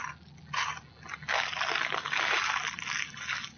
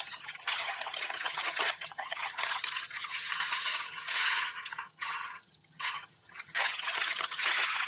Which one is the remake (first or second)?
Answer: second